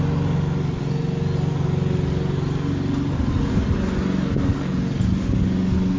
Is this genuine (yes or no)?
yes